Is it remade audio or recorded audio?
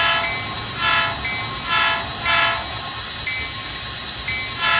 recorded